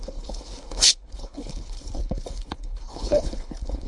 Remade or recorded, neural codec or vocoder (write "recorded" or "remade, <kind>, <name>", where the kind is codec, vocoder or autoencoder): remade, codec, HILCodec